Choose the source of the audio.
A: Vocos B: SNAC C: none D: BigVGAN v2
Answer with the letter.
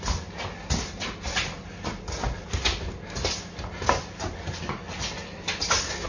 C